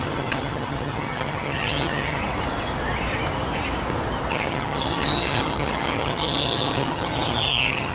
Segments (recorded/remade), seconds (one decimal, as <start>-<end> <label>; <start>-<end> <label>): 0.0-2.2 remade; 2.2-4.3 recorded; 4.3-7.9 remade